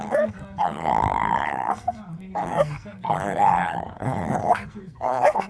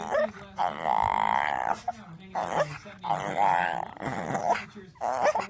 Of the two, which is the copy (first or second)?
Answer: first